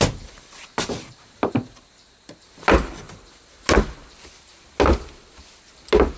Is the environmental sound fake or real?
real